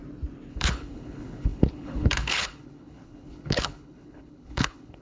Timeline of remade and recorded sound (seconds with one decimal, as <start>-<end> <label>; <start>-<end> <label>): 0.0-0.5 recorded; 0.5-5.0 remade